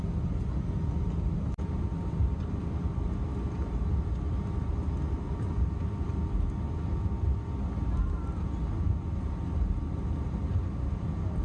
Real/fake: real